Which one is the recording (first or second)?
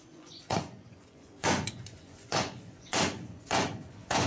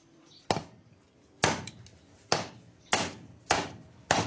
second